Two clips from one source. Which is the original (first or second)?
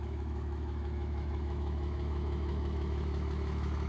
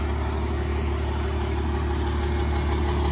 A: second